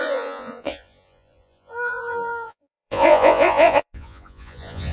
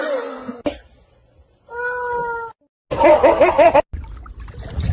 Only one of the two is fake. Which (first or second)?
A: first